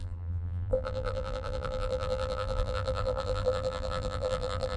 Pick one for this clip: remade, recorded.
remade